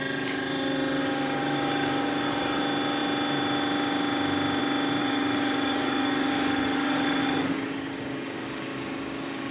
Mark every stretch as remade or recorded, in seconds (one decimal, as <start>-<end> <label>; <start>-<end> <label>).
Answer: 0.0-1.0 recorded; 1.0-2.6 remade; 2.6-5.0 recorded; 5.0-9.5 remade